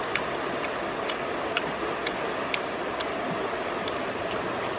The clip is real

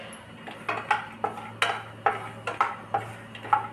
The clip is real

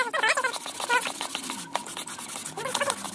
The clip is real